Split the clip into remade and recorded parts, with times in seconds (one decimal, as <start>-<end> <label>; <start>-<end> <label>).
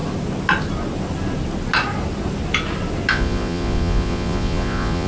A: 0.0-3.1 recorded; 3.1-5.1 remade